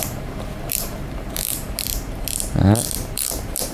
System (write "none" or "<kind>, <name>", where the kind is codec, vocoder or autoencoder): vocoder, BigVGAN v2